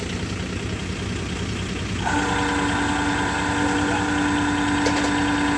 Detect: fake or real real